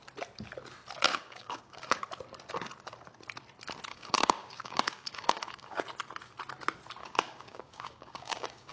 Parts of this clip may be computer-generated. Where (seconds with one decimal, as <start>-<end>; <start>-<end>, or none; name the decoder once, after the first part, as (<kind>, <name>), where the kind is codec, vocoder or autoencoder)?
1.1-2.1 (codec, DAC); 3.9-5.8; 7.0-8.7